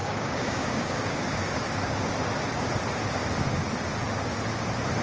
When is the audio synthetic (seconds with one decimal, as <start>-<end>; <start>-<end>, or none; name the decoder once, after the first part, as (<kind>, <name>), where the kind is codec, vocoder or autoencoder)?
0.0-2.1 (codec, DAC)

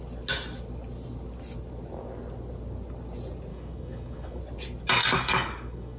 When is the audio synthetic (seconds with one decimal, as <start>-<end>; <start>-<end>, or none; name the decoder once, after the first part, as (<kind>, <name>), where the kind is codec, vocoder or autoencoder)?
3.5-4.4 (codec, DAC); 5.0-6.0